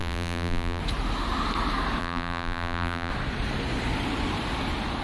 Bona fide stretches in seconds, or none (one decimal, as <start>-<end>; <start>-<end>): 0.8-2.0; 3.1-5.0

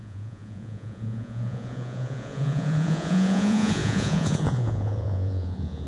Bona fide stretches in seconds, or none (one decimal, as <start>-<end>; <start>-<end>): none

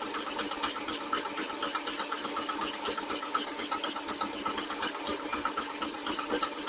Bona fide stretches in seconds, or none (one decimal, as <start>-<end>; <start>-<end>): 0.0-6.7

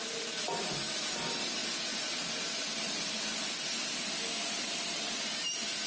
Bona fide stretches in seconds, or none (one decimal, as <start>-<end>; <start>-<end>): 0.0-5.9

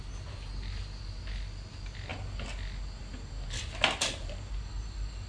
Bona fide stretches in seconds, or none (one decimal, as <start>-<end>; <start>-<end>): 0.0-5.3